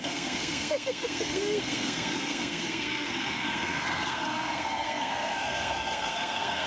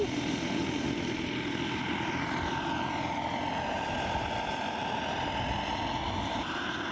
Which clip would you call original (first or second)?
second